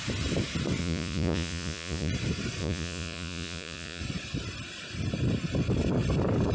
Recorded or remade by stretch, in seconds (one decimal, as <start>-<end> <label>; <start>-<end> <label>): 0.0-0.8 recorded; 0.8-2.1 remade; 2.1-2.6 recorded; 2.6-4.0 remade; 4.0-6.5 recorded